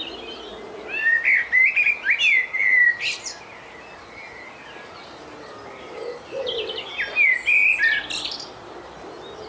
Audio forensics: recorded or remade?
recorded